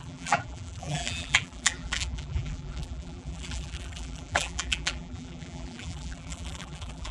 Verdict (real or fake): fake